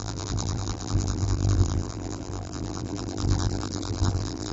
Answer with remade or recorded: remade